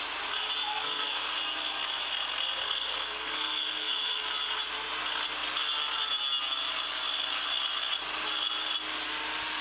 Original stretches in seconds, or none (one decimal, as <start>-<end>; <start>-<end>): 0.0-0.7; 1.4-2.6; 4.2-9.6